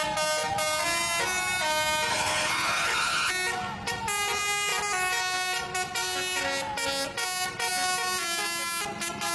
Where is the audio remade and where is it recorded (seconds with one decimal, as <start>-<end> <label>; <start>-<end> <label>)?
0.0-2.1 recorded; 2.1-3.3 remade; 3.3-9.3 recorded